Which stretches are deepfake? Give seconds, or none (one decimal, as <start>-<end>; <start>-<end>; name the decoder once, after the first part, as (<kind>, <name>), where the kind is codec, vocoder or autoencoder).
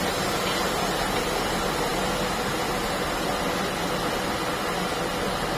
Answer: none